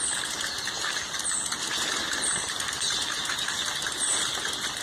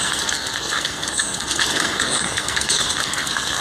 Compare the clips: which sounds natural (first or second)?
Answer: first